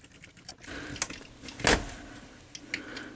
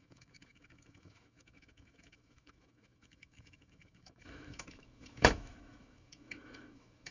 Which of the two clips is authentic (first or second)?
first